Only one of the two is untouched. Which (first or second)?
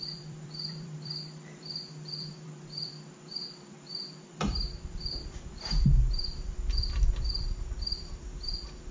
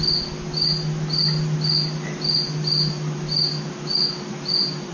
second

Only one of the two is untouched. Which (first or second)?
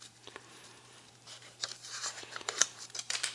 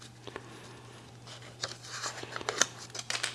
second